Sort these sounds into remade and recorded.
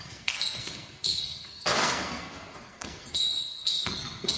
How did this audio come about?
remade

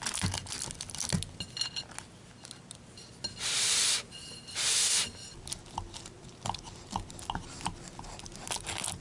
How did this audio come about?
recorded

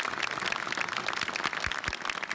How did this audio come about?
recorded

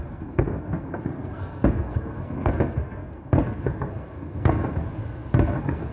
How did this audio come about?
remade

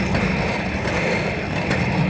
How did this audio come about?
recorded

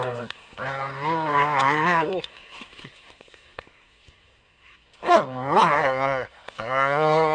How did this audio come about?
remade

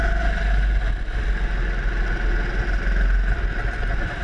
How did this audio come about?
recorded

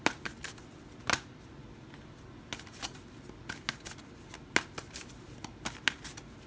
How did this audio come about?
recorded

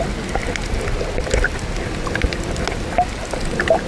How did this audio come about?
recorded